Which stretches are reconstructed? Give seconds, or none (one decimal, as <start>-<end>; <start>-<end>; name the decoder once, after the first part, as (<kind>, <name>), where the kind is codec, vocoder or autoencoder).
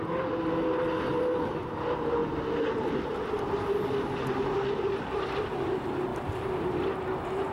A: none